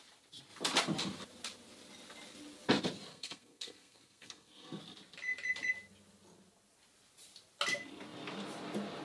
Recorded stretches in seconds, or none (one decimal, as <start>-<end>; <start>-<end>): 0.0-3.1; 4.8-9.0